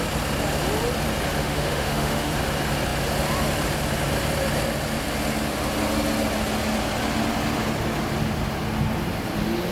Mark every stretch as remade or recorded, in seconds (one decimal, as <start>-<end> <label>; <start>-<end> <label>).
0.0-1.4 recorded; 1.4-2.3 remade; 2.3-9.7 recorded